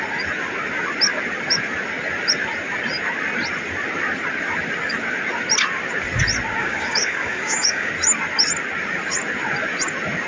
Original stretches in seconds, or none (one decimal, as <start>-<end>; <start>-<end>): 0.0-6.6; 7.9-10.3